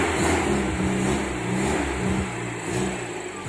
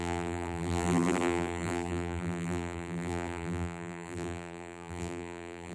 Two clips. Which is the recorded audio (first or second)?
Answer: first